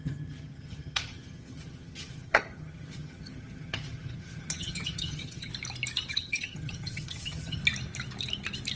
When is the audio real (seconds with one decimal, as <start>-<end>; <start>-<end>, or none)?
5.5-6.1; 7.6-8.8